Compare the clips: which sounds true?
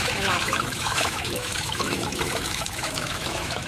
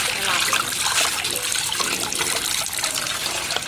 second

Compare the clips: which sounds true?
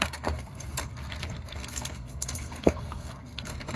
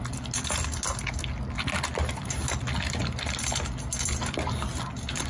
second